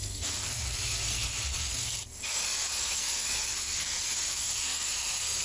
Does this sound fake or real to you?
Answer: fake